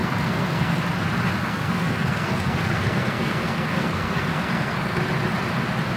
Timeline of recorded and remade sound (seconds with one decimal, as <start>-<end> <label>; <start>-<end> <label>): 0.0-0.8 remade; 0.8-1.4 recorded; 1.4-5.0 remade; 5.0-6.0 recorded